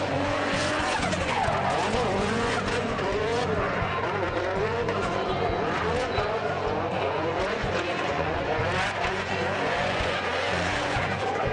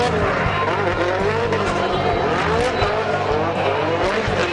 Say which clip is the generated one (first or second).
first